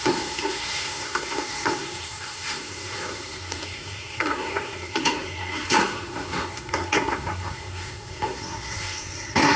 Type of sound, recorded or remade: remade